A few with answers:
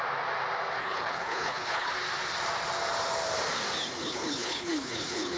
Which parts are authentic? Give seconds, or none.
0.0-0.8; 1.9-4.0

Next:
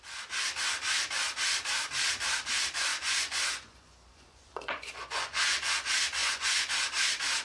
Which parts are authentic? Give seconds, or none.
0.0-2.9; 5.7-6.2; 6.7-7.4

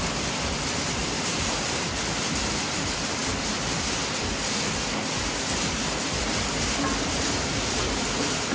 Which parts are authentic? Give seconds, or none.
0.0-1.0; 1.5-8.5

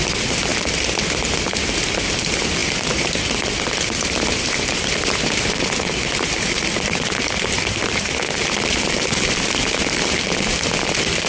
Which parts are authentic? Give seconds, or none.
0.5-2.1